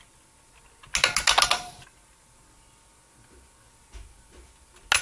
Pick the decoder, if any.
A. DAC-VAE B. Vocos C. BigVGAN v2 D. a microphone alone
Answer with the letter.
D